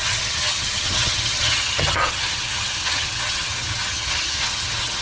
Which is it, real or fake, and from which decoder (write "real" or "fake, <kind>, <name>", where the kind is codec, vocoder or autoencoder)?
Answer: fake, vocoder, HiFi-GAN